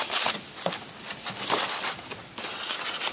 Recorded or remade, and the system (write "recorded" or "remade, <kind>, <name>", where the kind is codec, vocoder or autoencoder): recorded